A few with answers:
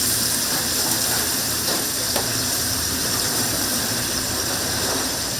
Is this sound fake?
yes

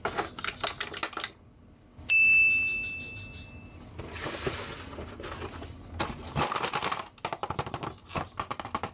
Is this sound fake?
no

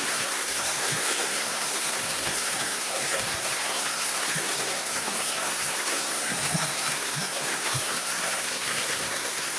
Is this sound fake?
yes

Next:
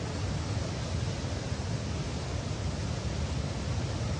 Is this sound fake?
no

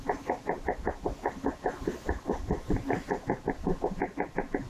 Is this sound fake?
no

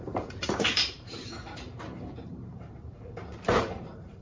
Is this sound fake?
yes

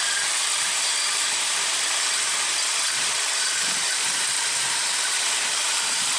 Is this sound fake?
yes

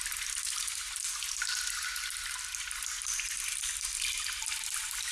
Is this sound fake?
no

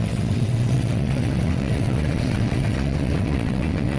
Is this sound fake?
yes